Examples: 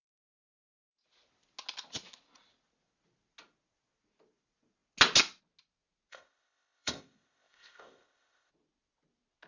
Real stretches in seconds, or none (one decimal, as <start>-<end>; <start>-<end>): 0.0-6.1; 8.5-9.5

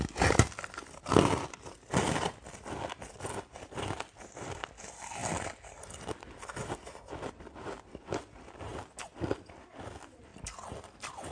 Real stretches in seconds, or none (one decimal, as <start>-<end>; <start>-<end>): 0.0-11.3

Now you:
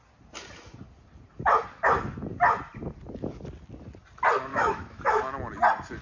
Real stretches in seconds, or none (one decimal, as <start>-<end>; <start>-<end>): 0.0-4.5; 5.4-6.0

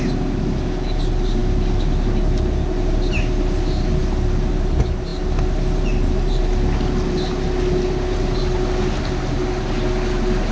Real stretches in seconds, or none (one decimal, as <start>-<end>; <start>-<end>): 0.0-10.5